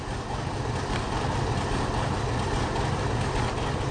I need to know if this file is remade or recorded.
recorded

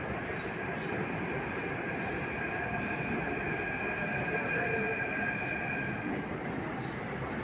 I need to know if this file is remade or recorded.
recorded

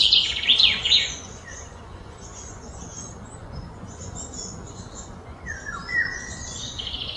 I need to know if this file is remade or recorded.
remade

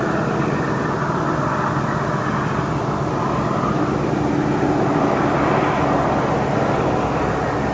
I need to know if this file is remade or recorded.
recorded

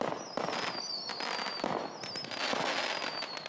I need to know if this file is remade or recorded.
recorded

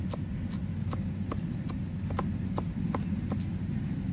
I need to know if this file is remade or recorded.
recorded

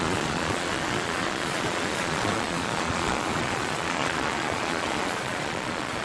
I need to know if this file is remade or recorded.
remade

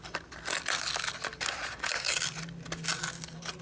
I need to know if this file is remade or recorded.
recorded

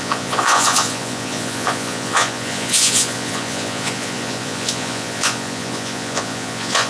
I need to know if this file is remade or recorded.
remade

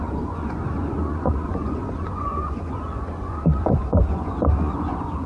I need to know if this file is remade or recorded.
remade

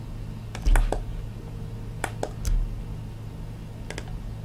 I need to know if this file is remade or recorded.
recorded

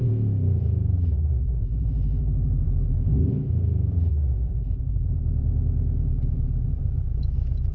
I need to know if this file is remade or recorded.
remade